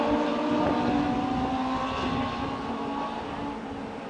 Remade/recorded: recorded